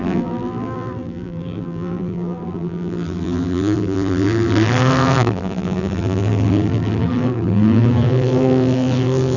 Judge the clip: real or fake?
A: fake